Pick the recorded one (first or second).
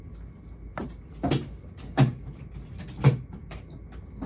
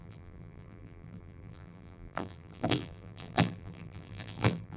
first